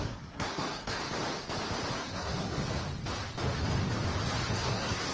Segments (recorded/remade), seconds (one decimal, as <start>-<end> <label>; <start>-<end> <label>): 0.0-1.0 remade; 1.0-1.9 recorded; 1.9-2.6 remade; 2.6-4.5 recorded; 4.5-5.1 remade